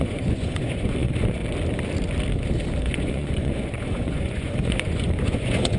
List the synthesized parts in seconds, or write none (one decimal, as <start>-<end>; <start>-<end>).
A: 0.0-1.4; 2.8-5.8